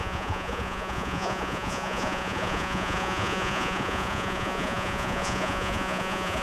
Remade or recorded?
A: remade